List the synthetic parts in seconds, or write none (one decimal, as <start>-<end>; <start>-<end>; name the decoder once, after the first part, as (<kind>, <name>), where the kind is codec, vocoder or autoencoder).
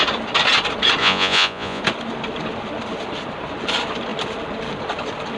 1.0-1.8 (vocoder, Vocos)